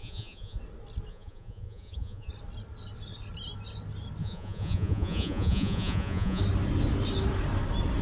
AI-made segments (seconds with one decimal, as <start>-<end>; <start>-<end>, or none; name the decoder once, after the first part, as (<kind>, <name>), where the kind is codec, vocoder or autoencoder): 0.0-0.6 (vocoder, Vocos); 1.1-2.3; 4.2-6.4